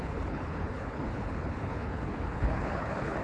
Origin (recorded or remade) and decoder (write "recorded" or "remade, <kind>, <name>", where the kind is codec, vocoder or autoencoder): remade, codec, HILCodec